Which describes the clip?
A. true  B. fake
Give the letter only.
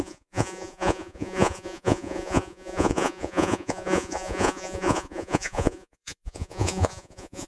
B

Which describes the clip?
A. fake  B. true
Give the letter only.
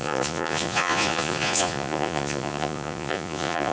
A